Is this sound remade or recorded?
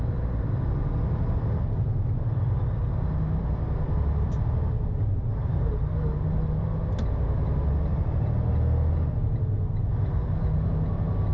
recorded